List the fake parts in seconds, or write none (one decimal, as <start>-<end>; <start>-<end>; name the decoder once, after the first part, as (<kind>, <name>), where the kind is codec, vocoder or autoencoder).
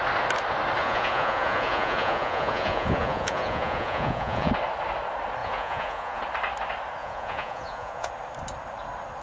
0.8-4.5 (vocoder, Vocos); 5.4-6.2; 7.0-8.1